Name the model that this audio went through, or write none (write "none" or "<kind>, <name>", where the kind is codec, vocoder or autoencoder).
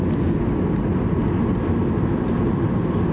none